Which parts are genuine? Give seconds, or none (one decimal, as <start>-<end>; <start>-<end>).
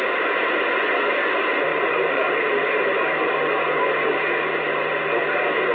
0.0-1.7; 2.3-5.7